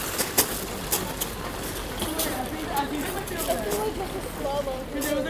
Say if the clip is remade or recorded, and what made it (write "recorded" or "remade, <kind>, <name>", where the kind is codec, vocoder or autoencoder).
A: recorded